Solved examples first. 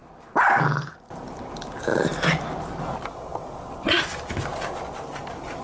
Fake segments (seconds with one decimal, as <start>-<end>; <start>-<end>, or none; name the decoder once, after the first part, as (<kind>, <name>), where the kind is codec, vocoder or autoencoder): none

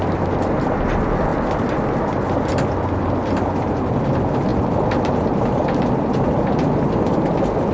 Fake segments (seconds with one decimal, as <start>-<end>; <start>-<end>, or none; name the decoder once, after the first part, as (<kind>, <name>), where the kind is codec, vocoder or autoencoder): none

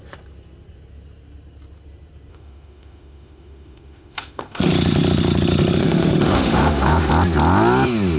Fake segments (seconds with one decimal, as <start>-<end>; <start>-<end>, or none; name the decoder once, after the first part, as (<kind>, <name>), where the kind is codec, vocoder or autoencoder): 2.3-4.7 (autoencoder, DAC-VAE); 5.8-7.1

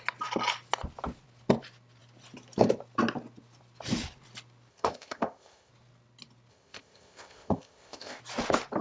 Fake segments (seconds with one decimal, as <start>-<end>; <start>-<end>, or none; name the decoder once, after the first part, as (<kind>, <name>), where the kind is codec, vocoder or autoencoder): 4.7-5.7 (codec, ZipCodec); 6.5-8.2

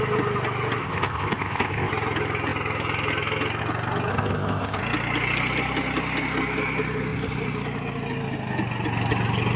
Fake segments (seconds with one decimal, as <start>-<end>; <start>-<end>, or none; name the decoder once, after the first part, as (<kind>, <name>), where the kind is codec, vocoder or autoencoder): 0.8-1.9 (codec, ZipCodec); 4.1-4.8

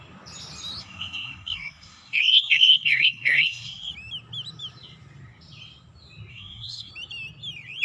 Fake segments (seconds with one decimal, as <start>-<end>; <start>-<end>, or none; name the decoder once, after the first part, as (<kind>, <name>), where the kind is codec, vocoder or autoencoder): 0.8-3.9 (codec, SNAC); 6.3-6.9